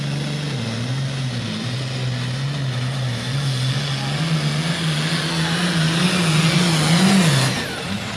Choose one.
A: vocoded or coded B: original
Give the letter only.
B